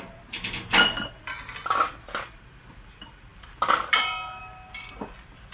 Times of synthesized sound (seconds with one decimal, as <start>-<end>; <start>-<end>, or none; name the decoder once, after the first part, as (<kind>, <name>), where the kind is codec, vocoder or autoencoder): none